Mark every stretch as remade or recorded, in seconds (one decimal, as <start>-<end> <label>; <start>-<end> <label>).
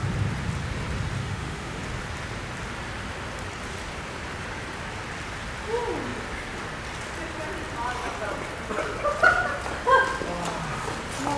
0.0-1.2 recorded; 1.2-1.8 remade; 1.8-11.4 recorded